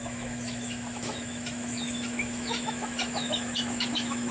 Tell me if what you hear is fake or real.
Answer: fake